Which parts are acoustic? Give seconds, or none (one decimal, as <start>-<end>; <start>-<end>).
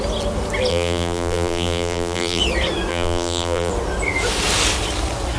0.0-0.7; 2.4-2.9; 3.7-5.4